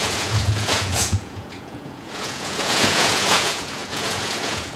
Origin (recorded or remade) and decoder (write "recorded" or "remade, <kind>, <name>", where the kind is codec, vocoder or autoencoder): remade, vocoder, Vocos